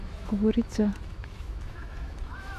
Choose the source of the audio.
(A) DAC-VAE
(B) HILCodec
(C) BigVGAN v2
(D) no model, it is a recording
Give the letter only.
A